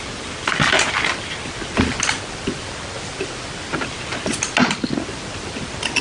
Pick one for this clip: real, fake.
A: real